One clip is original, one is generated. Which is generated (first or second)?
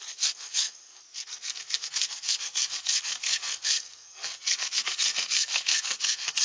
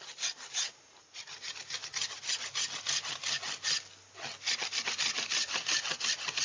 first